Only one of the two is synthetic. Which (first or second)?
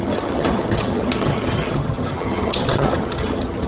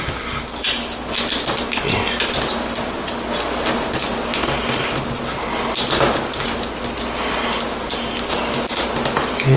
first